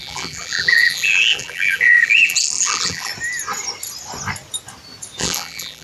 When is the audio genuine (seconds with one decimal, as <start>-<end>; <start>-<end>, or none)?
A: 3.1-5.2